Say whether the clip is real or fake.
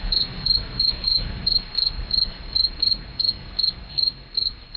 fake